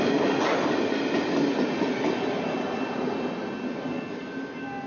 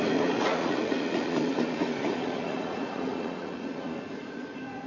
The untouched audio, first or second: first